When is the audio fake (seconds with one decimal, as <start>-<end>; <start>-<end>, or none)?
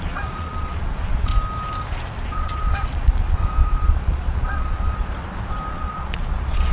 0.0-1.3; 2.3-5.1; 5.7-6.7